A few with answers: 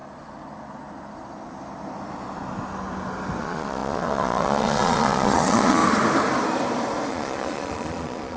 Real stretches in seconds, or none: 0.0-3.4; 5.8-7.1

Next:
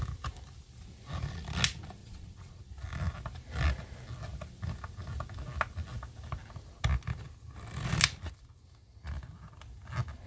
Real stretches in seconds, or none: 0.0-2.0; 2.6-10.3

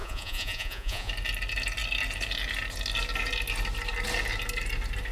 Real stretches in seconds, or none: 1.1-5.1

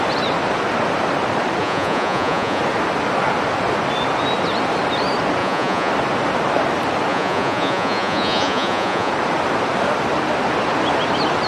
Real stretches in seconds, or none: 0.0-1.6; 2.6-5.4; 5.9-7.1; 9.1-11.5

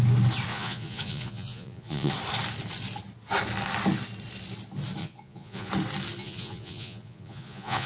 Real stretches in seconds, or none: 0.0-0.5; 2.1-5.0; 5.7-6.2

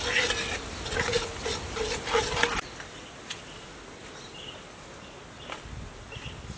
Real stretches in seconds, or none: 0.0-6.6